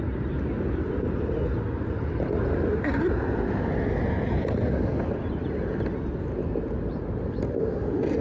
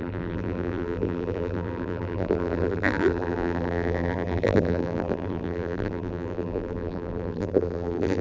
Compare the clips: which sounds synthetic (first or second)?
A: second